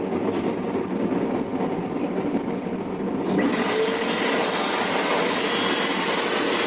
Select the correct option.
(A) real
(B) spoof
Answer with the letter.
A